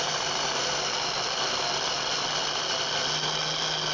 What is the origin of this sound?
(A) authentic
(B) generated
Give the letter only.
A